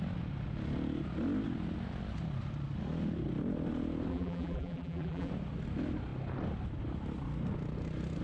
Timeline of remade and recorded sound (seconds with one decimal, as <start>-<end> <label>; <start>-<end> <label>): 0.0-4.1 recorded; 4.1-5.3 remade; 5.3-8.2 recorded